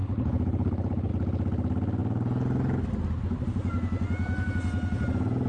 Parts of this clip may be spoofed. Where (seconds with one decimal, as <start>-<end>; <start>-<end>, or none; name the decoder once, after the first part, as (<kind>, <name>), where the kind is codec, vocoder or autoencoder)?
0.0-1.1 (codec, HILCodec)